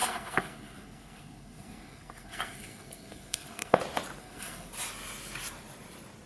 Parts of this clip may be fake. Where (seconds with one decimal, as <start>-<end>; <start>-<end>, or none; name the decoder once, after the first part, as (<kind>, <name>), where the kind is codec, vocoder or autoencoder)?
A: 0.0-3.8 (codec, SNAC); 4.2-4.7